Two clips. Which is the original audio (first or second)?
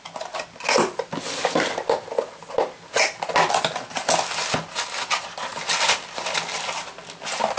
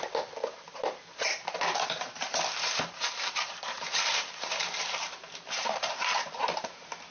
first